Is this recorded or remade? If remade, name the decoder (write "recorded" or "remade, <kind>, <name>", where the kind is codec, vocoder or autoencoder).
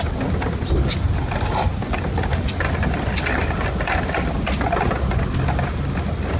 recorded